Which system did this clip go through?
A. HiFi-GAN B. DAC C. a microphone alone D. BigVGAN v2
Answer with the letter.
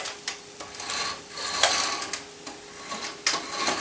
C